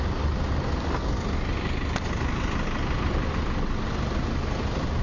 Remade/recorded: recorded